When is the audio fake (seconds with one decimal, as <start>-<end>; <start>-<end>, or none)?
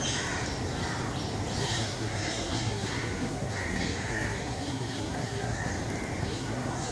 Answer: 1.6-5.7; 6.2-6.9